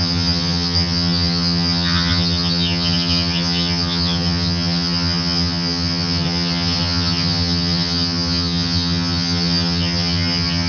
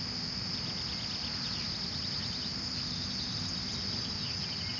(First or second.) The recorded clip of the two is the second